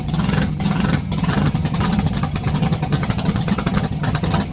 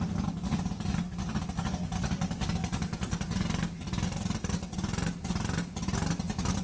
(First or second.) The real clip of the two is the second